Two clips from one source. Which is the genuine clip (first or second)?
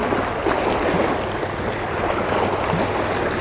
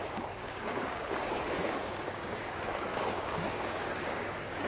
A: first